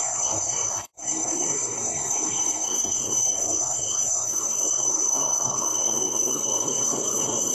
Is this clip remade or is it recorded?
remade